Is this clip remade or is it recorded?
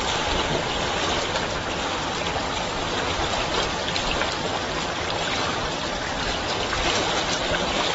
recorded